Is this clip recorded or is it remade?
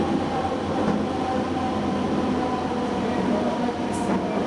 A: recorded